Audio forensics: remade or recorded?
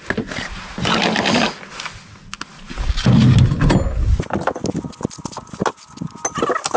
recorded